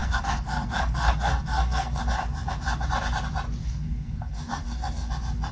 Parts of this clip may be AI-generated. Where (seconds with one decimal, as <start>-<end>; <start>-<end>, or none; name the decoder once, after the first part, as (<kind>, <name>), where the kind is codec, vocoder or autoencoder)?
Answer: 0.0-2.0 (codec, SNAC); 3.6-5.1